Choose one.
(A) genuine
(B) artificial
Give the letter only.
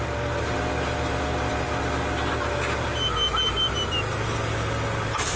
A